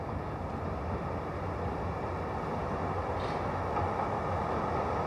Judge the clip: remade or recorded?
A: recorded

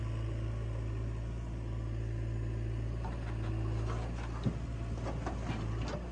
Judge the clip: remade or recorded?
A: recorded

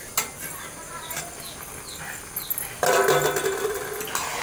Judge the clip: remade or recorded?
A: recorded